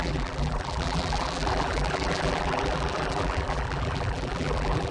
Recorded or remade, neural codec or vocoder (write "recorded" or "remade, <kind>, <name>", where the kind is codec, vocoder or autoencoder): remade, vocoder, BigVGAN v2